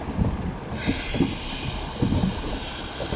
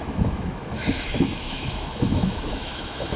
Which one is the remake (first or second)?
second